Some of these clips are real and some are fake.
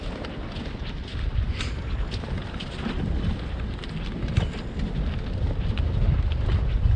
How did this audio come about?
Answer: real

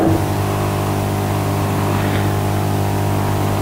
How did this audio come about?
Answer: real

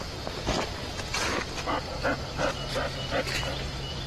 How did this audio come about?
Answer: fake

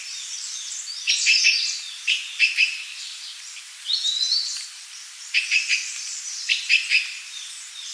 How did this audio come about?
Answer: fake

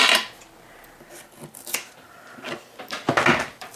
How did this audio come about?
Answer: real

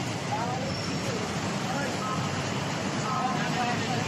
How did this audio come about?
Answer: fake